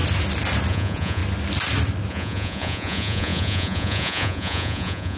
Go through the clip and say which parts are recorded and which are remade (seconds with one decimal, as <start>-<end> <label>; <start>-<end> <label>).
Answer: 0.0-0.7 recorded; 0.7-1.2 remade; 1.2-2.1 recorded; 2.1-5.2 remade